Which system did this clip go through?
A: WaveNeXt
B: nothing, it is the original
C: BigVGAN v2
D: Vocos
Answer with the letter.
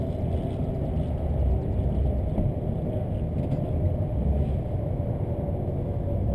B